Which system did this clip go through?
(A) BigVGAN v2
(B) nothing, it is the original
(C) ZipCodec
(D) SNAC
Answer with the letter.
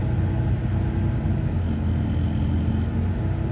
B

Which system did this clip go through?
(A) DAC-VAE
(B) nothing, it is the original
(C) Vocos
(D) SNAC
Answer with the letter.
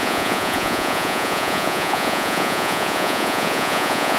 C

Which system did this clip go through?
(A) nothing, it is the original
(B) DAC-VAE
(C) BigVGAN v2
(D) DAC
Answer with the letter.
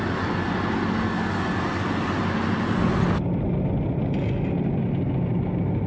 A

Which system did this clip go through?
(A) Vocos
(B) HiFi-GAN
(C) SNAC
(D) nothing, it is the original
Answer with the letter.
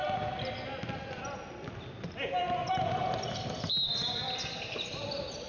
D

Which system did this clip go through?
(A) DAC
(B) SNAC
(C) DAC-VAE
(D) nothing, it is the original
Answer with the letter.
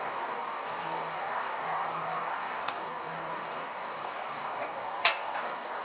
A